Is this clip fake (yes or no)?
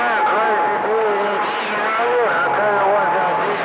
no